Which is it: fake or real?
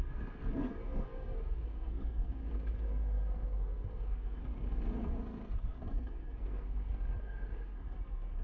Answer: fake